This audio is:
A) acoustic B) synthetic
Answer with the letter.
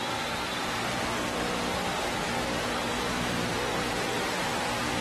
B